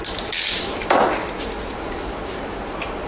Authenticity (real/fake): fake